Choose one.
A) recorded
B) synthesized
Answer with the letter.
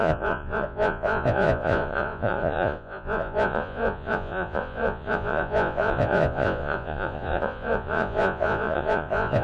B